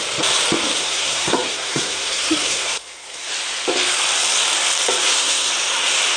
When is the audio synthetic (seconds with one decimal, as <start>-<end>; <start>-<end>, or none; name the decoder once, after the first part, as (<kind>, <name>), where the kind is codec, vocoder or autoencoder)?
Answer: 0.8-3.3 (codec, SNAC); 5.0-5.5